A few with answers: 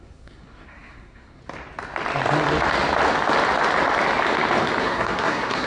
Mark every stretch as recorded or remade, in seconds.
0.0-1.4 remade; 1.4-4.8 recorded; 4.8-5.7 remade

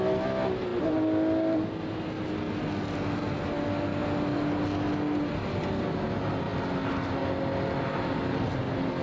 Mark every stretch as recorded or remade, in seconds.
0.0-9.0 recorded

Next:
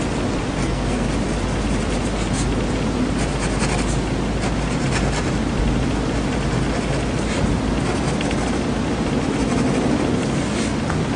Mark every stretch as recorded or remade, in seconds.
0.0-0.6 recorded; 0.6-1.1 remade; 1.1-11.2 recorded